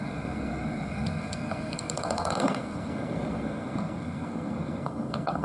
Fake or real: fake